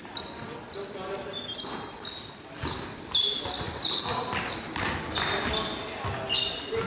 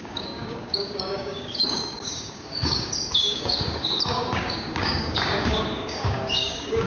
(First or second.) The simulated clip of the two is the second